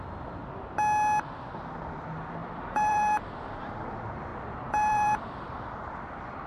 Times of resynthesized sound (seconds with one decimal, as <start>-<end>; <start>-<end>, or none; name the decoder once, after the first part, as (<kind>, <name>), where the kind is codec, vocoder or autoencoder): 2.4-3.9 (vocoder, BigVGAN v2); 4.3-5.9